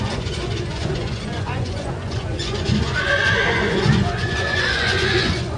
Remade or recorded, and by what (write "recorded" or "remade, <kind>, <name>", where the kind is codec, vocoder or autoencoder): remade, vocoder, Vocos